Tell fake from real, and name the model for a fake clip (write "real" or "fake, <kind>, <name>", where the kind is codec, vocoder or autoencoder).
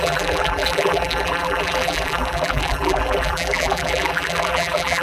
fake, vocoder, BigVGAN v2